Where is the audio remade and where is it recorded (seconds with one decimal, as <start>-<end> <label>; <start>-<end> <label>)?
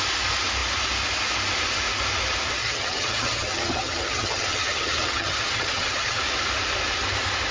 0.0-2.6 recorded; 2.6-6.2 remade; 6.2-7.5 recorded